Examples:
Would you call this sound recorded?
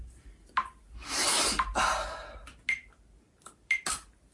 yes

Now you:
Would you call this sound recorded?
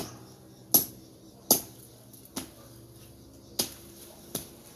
yes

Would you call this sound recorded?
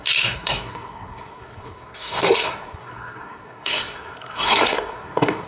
no